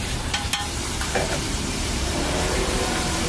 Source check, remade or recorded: remade